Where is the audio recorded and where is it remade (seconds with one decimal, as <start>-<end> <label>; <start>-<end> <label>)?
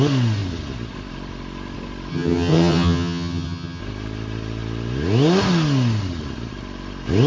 0.0-2.1 recorded; 2.1-3.8 remade; 3.8-7.3 recorded